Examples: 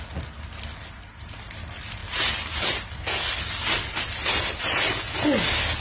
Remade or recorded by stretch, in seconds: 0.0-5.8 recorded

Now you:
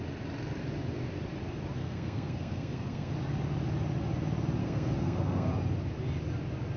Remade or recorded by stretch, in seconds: 0.0-1.8 recorded; 1.8-3.1 remade; 3.1-4.6 recorded; 4.6-5.5 remade; 5.5-6.8 recorded

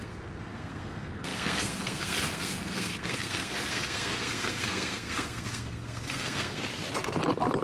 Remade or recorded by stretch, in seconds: 0.0-6.6 remade; 6.6-7.6 recorded

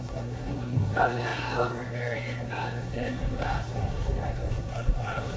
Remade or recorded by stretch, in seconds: 0.0-5.4 remade

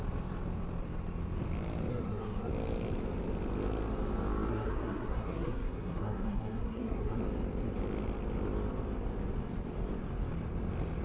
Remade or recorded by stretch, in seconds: 0.0-1.9 recorded; 1.9-2.5 remade; 2.5-4.5 recorded; 4.5-7.2 remade; 7.2-11.0 recorded

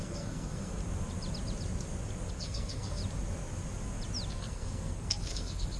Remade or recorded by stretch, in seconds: 0.0-0.8 remade; 0.8-2.3 recorded; 2.3-3.0 remade; 3.0-4.3 recorded; 4.3-5.8 remade